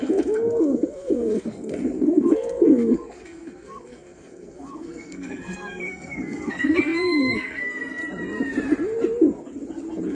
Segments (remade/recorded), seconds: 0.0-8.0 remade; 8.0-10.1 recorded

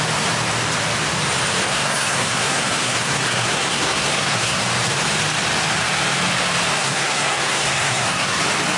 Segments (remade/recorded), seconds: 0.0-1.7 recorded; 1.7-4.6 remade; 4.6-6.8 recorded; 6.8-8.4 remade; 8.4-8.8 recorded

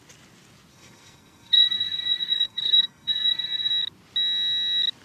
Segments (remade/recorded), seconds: 0.0-0.7 recorded; 0.7-3.7 remade; 3.7-5.0 recorded

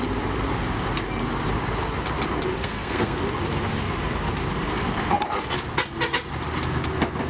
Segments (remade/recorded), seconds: 0.0-2.6 recorded; 2.6-3.2 remade; 3.2-7.3 recorded